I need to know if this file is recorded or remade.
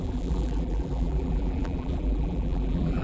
remade